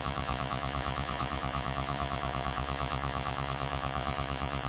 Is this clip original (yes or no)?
no